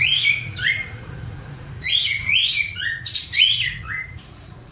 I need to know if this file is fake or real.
fake